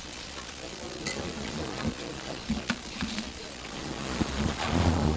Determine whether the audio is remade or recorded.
remade